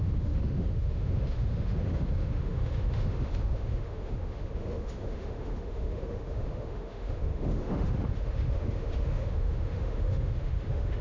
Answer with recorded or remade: remade